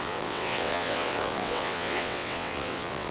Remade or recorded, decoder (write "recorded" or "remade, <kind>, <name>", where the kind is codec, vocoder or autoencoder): remade, vocoder, WaveNeXt